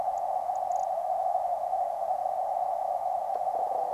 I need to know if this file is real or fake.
fake